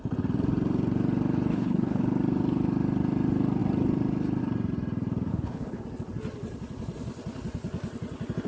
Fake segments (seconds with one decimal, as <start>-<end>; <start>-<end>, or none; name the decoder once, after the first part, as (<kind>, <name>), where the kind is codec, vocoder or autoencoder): 1.5-2.0 (codec, HILCodec); 5.3-5.8